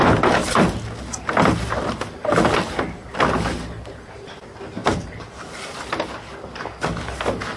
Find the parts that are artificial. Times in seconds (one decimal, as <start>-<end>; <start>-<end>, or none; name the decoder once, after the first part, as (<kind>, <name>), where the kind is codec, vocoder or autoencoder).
none